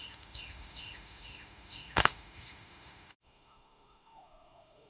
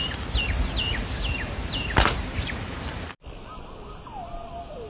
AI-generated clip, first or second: first